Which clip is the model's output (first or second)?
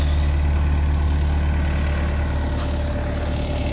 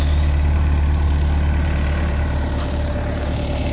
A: second